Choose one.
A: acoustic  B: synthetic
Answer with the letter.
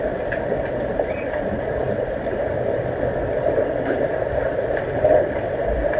B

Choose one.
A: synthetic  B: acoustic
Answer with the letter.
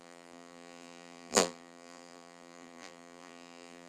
A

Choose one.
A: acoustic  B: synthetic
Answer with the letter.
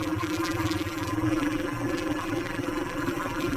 B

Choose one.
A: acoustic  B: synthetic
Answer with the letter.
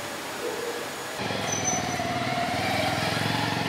B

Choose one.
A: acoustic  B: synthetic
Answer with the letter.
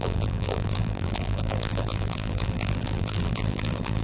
B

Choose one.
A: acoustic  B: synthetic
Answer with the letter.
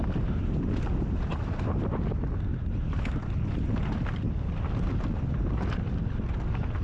A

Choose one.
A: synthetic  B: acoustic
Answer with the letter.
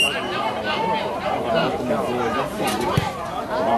A